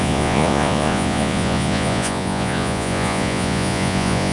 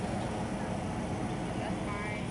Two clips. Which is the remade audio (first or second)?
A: first